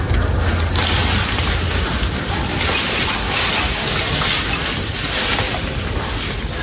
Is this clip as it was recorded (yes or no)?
yes